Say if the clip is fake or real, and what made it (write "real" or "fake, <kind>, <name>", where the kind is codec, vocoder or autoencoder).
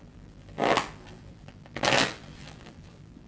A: fake, vocoder, BigVGAN v2